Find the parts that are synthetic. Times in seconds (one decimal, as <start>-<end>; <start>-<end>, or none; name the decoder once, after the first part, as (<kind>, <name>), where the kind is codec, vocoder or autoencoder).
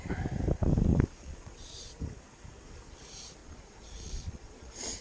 0.9-2.0 (vocoder, Vocos); 3.4-5.0